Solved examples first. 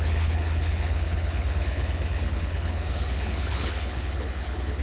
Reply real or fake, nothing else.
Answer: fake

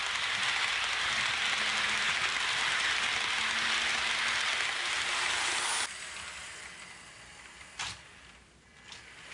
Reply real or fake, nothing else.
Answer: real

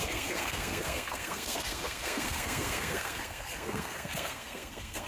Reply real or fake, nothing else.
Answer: fake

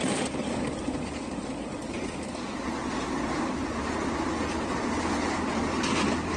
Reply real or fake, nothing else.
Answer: real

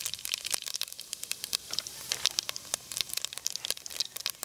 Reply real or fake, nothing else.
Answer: real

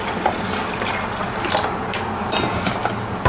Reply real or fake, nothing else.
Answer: real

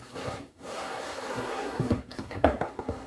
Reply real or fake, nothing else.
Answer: fake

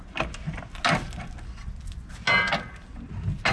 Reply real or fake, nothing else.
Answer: real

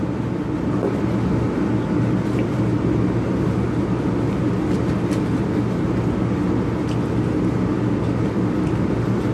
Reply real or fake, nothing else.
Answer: real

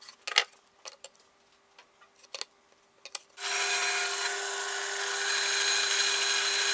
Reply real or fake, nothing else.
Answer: real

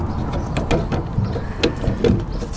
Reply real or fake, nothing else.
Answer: real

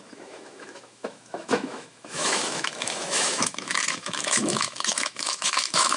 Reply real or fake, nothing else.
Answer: fake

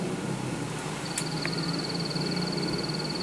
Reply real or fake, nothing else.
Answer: real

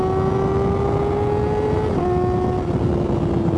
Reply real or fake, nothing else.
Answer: real